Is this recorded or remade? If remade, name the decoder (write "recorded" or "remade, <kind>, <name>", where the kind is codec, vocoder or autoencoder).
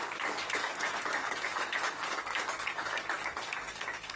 remade, codec, DAC